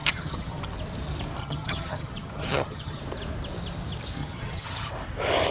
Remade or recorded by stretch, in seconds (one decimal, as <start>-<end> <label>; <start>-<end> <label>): 0.0-0.6 remade; 0.6-1.4 recorded; 1.4-3.0 remade; 3.0-4.2 recorded; 4.2-4.9 remade; 4.9-5.5 recorded